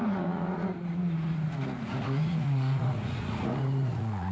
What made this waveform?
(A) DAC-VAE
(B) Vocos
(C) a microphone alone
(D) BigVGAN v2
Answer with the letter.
B